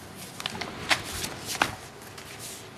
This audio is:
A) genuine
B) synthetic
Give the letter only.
A